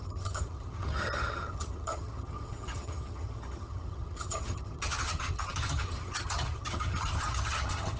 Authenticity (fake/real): fake